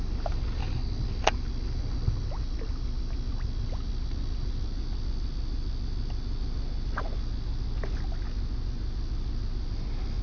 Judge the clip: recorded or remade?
recorded